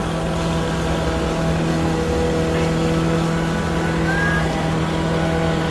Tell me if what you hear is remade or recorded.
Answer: recorded